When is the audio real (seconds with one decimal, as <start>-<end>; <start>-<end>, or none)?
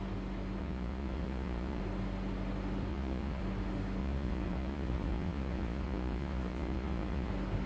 0.0-0.6; 1.8-2.9; 3.4-4.0; 7.3-7.7